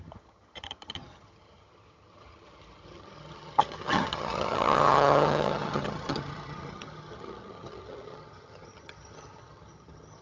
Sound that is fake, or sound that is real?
fake